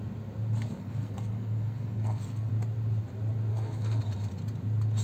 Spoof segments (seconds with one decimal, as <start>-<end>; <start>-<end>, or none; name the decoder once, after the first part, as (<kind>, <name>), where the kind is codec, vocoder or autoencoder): 0.7-2.5 (codec, SNAC); 3.5-4.0